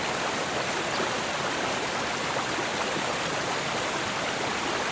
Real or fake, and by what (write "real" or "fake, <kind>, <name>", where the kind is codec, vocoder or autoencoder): real